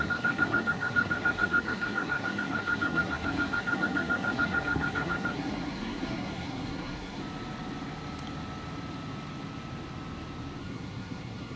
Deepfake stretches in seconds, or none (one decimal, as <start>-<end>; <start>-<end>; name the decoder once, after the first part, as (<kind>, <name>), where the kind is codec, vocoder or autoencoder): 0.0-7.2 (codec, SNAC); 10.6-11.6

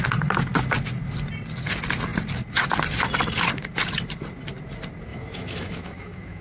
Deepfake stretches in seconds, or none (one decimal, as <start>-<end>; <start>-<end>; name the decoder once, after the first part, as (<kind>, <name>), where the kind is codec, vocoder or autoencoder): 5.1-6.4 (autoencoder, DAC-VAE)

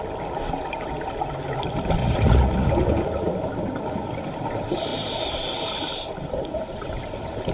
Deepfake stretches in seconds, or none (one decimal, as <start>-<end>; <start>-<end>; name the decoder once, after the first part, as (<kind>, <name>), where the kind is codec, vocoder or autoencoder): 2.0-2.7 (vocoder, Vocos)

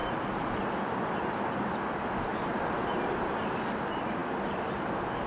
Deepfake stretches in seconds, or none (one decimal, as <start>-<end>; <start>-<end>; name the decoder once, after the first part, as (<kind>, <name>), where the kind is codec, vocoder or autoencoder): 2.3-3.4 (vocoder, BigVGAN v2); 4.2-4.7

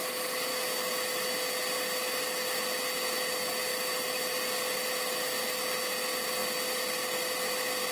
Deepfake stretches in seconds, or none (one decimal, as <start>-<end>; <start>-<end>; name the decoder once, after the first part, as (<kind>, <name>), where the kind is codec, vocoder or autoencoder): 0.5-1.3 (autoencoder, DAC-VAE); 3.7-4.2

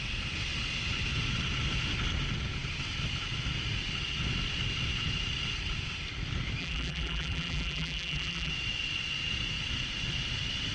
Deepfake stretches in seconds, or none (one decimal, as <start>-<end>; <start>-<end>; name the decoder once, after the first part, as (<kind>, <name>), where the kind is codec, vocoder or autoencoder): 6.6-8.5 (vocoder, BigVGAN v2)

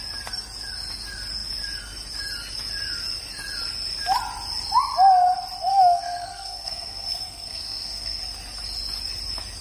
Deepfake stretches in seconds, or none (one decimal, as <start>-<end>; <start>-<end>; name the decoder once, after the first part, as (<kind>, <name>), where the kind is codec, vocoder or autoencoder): 5.7-8.2 (codec, SNAC)

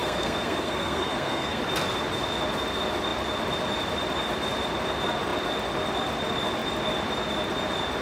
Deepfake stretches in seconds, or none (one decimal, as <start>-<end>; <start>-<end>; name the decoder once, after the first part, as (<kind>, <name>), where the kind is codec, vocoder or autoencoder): 0.0-1.6 (codec, SNAC)